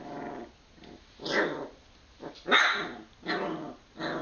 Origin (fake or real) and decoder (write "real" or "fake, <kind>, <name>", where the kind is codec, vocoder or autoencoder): real